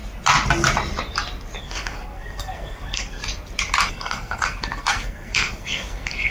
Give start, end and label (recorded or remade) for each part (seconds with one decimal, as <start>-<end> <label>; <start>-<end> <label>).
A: 0.0-1.6 recorded; 1.6-3.2 remade; 3.2-3.9 recorded; 3.9-6.3 remade